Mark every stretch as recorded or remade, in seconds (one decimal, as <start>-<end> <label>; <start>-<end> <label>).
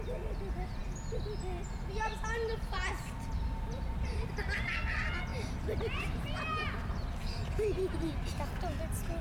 0.0-2.9 recorded; 2.9-4.3 remade; 4.3-5.3 recorded; 5.3-8.1 remade; 8.1-9.2 recorded